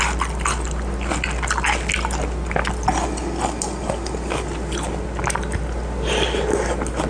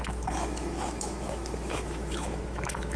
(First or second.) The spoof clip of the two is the second